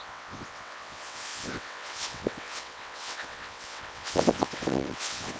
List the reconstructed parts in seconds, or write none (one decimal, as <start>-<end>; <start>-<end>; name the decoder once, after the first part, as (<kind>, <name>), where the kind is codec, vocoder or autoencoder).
0.0-5.4 (vocoder, WaveNeXt)